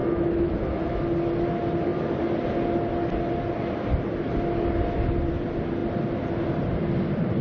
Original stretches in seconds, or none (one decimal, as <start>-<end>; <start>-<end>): 1.0-7.4